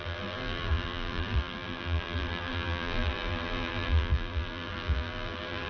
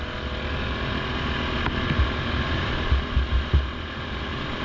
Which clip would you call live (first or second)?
second